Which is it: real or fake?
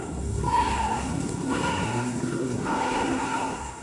fake